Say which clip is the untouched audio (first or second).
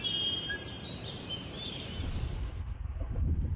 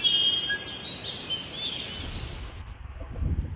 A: second